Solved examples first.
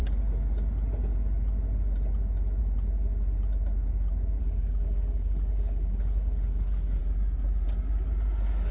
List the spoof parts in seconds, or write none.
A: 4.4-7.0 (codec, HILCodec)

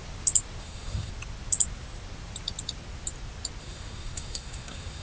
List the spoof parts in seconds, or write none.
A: 0.6-1.1 (codec, SNAC); 3.6-5.0

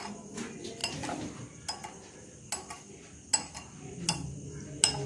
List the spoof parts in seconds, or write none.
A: none

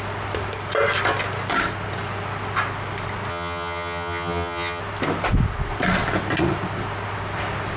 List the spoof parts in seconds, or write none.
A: 3.3-4.8 (vocoder, HiFi-GAN)

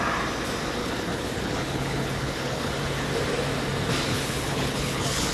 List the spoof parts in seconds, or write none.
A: 0.8-2.7 (codec, HILCodec); 4.1-5.3